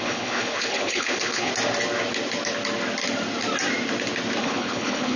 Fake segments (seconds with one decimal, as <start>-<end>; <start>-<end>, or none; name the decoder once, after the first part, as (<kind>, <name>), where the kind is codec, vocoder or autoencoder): 0.0-1.5 (codec, HILCodec); 4.4-5.2